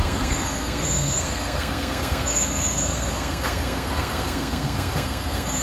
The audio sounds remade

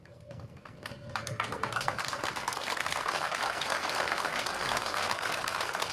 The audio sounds remade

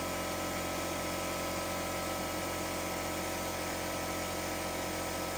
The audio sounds recorded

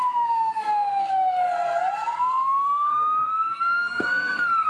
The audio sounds remade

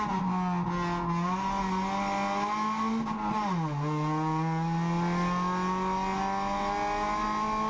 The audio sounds recorded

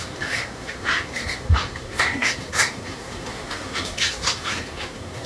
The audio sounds remade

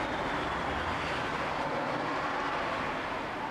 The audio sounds recorded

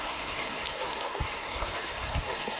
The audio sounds remade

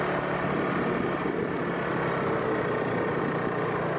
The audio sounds recorded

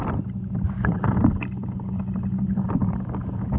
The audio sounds recorded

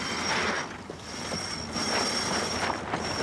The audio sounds recorded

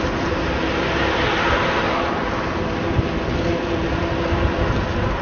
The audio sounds recorded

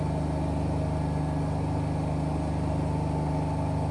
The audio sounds recorded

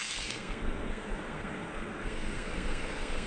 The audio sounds remade